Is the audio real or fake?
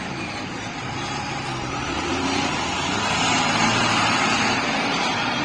fake